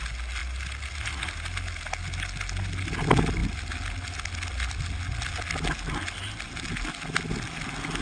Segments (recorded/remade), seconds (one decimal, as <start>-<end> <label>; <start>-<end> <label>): 0.0-8.0 recorded